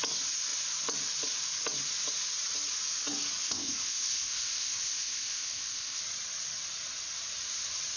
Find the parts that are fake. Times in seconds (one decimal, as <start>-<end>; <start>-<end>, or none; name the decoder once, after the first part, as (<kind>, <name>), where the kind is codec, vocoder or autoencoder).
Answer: 3.4-6.0 (codec, ZipCodec)